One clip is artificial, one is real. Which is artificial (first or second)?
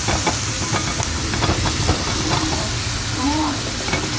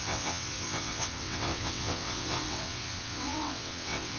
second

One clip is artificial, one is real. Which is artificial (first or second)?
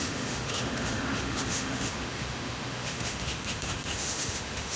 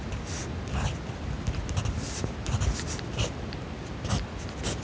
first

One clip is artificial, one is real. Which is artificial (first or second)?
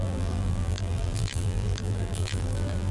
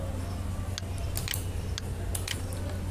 first